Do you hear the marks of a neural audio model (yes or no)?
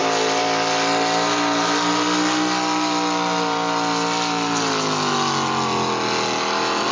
no